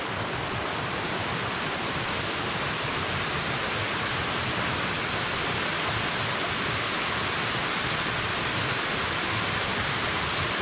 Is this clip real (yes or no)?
yes